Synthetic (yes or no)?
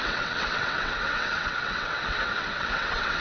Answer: yes